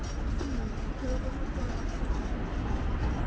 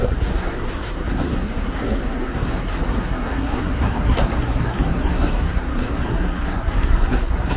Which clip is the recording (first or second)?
first